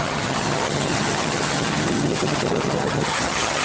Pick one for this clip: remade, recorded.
remade